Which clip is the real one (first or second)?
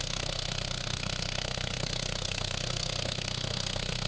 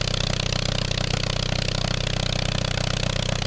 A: second